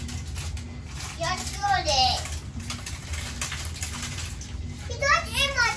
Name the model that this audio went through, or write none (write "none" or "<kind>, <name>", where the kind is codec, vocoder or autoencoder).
none